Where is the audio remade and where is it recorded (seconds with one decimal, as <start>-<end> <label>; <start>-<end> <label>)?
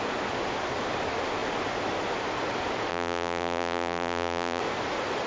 0.0-2.9 recorded; 2.9-4.6 remade; 4.6-5.3 recorded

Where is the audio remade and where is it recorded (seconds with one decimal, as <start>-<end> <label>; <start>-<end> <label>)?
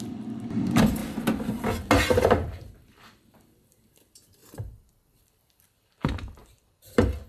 0.0-1.0 remade; 1.0-2.1 recorded; 2.1-4.4 remade; 4.4-5.2 recorded; 5.2-7.3 remade